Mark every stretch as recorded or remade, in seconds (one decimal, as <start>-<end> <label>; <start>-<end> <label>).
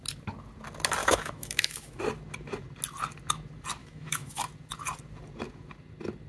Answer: 0.0-1.0 recorded; 1.0-2.0 remade; 2.0-3.8 recorded; 3.8-4.4 remade; 4.4-6.3 recorded